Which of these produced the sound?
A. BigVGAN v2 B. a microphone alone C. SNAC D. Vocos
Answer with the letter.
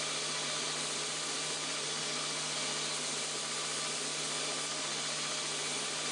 B